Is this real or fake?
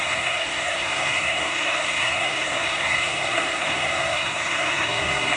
fake